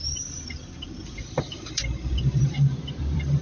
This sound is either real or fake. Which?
fake